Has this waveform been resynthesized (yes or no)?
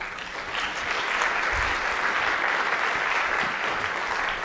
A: no